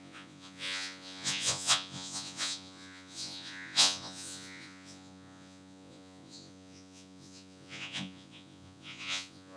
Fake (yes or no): yes